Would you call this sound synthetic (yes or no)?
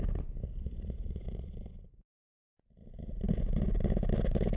no